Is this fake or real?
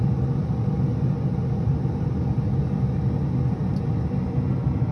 real